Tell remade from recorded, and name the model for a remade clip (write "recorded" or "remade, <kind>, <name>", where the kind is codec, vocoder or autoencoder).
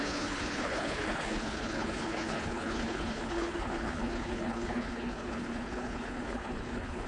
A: remade, codec, HILCodec